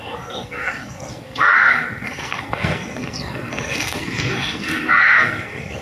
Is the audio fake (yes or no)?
yes